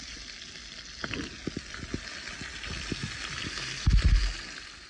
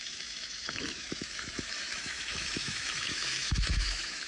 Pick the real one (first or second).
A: first